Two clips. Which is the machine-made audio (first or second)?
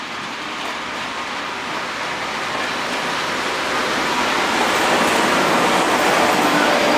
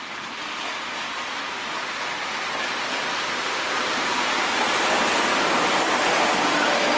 second